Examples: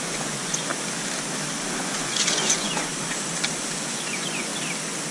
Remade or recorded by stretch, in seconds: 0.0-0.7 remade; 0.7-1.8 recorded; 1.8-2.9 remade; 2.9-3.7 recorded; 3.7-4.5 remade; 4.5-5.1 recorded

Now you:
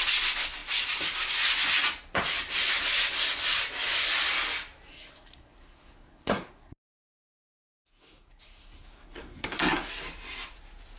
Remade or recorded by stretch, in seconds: 0.0-4.9 recorded; 4.9-9.9 remade; 9.9-11.0 recorded

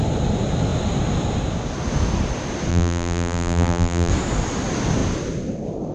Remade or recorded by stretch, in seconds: 0.0-2.7 recorded; 2.7-4.1 remade; 4.1-5.9 recorded

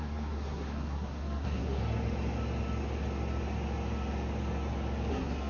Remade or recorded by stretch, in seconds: 0.0-1.8 remade; 1.8-5.1 recorded; 5.1-5.5 remade

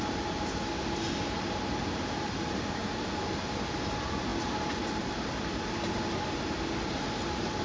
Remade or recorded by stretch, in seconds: 0.0-7.6 recorded

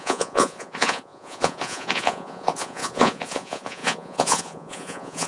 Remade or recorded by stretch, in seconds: 0.0-5.3 remade